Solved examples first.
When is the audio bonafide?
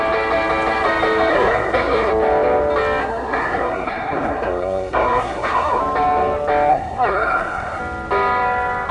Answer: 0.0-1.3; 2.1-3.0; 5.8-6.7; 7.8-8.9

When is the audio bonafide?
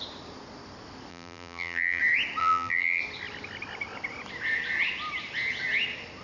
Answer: 0.0-1.1; 2.0-2.4; 3.0-6.2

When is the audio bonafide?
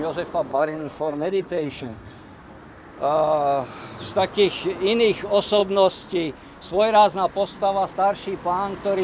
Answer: 0.0-0.5; 2.3-9.0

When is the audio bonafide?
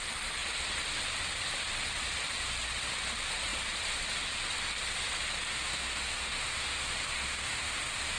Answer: 0.0-5.5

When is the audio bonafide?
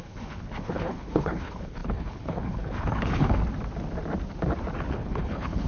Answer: 3.4-4.9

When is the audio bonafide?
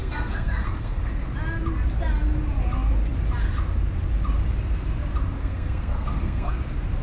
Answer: 1.1-5.4; 6.5-7.0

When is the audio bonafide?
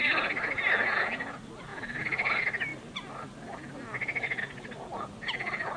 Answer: 0.0-5.8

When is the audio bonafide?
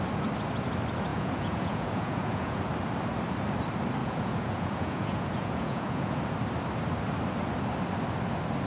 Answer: 0.0-1.1; 2.6-4.0; 6.2-8.7